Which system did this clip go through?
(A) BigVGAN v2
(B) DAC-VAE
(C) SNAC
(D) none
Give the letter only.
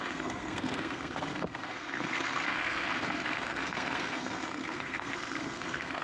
C